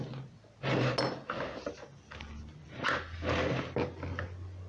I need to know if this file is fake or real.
real